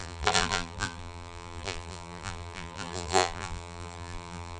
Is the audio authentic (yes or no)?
no